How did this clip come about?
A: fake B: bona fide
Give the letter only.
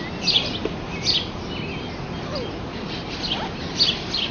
B